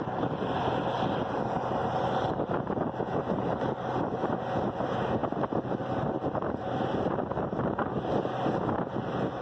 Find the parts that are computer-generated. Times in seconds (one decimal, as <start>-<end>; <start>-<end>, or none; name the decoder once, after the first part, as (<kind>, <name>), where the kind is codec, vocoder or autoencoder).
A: none